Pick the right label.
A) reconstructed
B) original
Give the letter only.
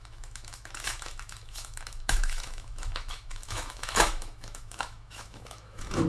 A